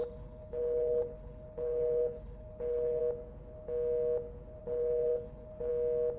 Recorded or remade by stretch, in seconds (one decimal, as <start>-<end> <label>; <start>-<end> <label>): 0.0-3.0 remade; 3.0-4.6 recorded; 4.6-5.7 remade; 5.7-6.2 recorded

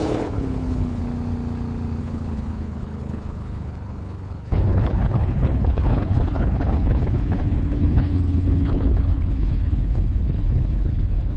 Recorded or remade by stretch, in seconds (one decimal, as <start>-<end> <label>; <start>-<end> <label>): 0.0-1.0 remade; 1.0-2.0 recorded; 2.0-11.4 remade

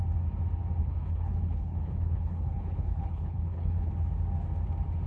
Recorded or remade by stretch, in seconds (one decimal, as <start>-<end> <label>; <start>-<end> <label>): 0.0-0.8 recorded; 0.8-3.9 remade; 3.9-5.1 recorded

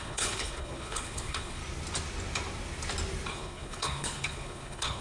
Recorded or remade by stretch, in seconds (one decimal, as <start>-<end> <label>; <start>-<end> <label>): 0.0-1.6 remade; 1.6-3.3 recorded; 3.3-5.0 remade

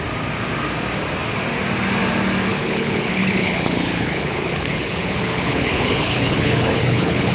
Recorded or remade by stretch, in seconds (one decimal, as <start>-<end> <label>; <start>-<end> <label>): 0.0-2.5 recorded; 2.5-7.3 remade